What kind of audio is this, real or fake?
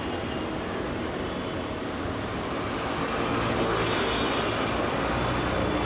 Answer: real